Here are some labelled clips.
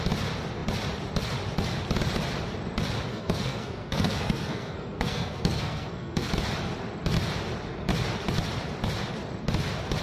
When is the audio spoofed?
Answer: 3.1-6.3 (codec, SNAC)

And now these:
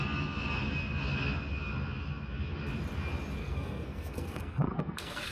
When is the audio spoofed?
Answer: 3.4-5.3 (codec, SNAC)

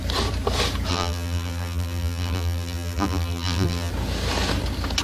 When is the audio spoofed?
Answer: 0.9-3.9 (vocoder, BigVGAN v2)

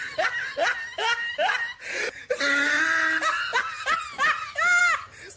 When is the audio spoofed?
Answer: none